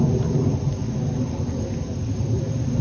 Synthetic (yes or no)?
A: no